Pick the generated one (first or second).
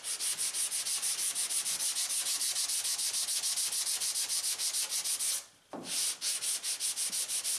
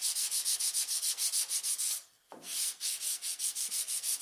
second